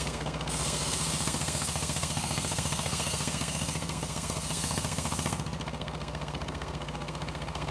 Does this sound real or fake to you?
fake